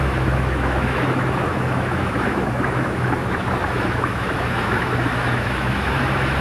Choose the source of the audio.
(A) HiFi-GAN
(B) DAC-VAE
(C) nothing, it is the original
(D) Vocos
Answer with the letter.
B